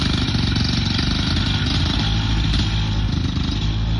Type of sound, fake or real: real